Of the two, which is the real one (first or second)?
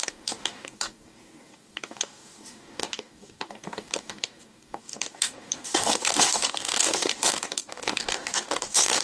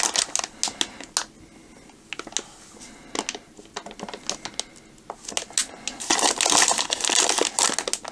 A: second